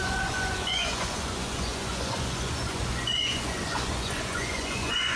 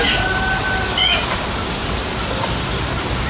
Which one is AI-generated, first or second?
first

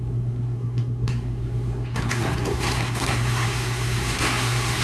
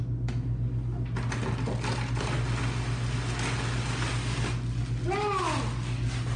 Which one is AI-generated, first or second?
first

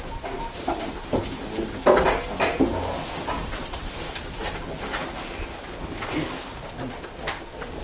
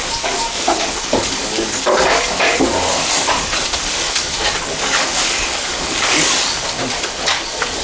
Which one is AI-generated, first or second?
second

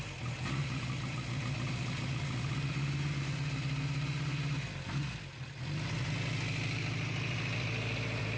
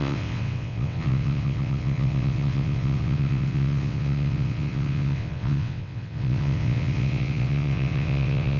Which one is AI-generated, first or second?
second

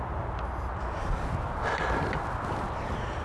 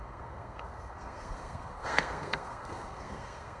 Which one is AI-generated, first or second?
second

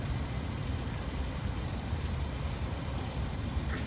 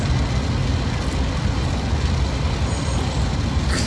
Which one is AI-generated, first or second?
first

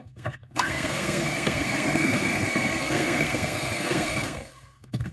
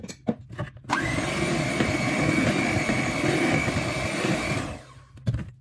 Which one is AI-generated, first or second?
first